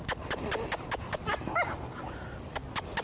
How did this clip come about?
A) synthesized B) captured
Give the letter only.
B